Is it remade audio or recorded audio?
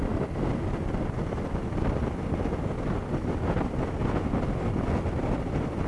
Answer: recorded